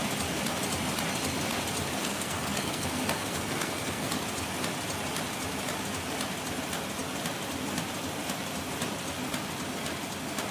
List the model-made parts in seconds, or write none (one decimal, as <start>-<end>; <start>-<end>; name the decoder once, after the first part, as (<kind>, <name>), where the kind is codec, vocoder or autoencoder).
2.0-4.1 (codec, SNAC)